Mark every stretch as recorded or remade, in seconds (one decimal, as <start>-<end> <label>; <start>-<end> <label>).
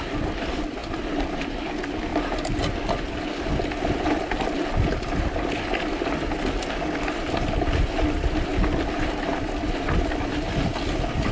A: 0.0-11.3 recorded